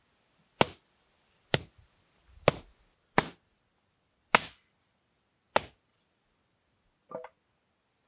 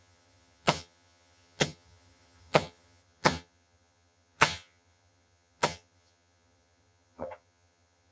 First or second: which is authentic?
first